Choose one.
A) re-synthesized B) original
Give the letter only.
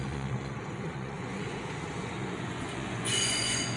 A